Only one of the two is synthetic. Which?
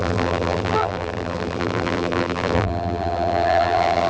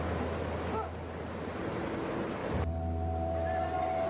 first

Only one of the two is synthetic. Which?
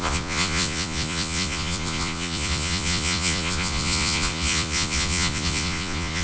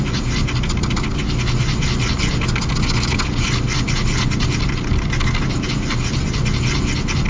first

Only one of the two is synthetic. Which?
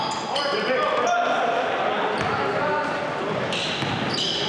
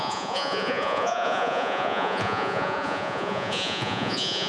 second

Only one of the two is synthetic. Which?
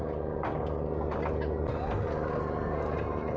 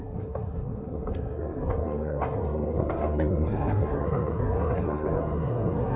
second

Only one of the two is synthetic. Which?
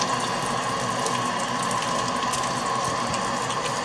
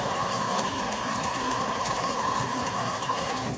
second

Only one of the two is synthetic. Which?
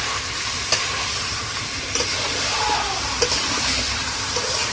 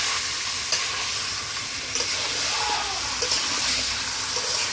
first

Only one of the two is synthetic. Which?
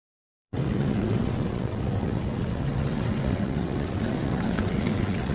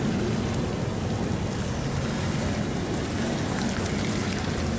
first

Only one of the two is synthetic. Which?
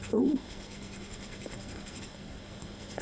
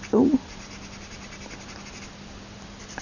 first